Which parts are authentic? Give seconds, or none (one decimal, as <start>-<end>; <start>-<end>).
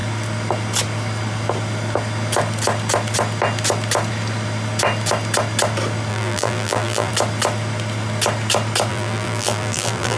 0.0-6.1; 7.1-8.9